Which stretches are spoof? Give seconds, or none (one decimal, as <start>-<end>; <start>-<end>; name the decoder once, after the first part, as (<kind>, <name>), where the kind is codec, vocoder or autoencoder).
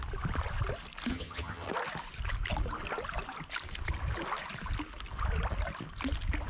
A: 1.1-1.7 (vocoder, HiFi-GAN)